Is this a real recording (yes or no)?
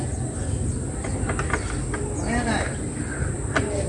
yes